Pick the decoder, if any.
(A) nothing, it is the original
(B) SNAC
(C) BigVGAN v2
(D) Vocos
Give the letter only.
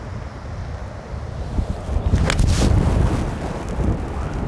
A